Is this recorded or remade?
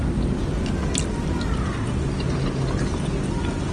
recorded